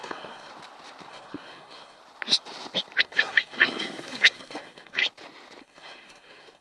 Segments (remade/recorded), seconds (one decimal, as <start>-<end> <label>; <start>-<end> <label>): 0.0-0.5 remade; 0.5-1.1 recorded; 1.1-2.0 remade; 2.0-3.0 recorded; 3.0-5.0 remade; 5.0-5.6 recorded; 5.6-6.6 remade